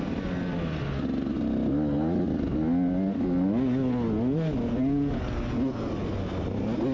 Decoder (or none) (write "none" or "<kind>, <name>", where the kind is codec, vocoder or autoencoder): none